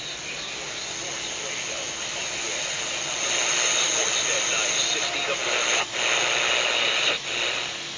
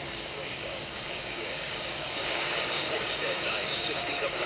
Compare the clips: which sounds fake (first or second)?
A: second